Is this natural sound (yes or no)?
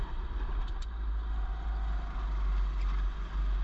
yes